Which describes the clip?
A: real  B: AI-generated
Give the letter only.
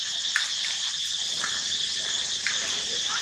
B